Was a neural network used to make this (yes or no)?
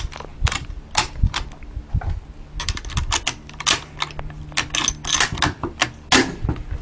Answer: no